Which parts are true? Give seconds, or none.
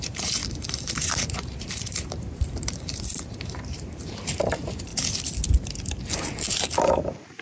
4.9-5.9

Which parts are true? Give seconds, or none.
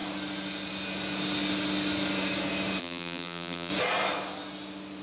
0.0-2.8; 3.7-5.0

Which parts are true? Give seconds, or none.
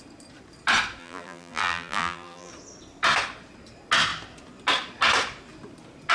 0.0-1.0; 2.5-6.1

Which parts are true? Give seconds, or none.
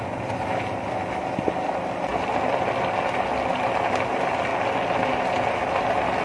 0.0-6.2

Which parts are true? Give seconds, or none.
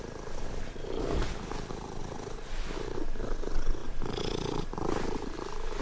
0.0-5.8